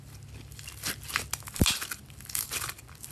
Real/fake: real